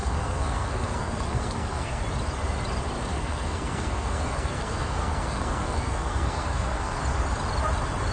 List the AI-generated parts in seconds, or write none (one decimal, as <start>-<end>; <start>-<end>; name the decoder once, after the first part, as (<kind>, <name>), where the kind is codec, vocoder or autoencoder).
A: 0.0-2.0 (codec, SNAC); 3.1-7.0